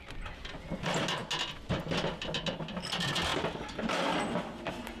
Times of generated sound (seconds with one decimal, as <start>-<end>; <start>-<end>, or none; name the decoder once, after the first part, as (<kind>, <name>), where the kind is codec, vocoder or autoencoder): none